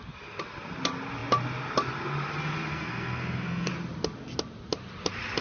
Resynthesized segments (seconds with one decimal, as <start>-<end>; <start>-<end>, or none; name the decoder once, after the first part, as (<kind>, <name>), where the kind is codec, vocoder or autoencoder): 2.7-3.7 (codec, SNAC)